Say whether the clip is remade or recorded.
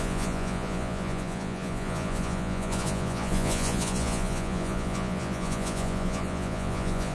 remade